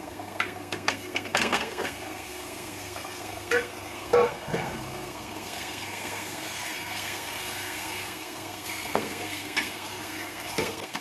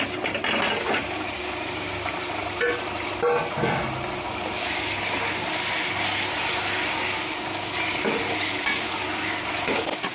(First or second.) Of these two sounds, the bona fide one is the second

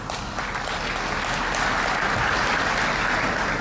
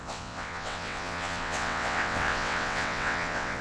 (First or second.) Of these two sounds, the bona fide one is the first